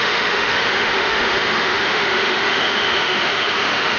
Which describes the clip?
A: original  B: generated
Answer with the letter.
B